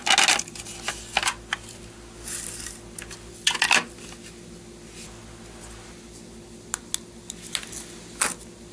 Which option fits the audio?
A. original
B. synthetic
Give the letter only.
A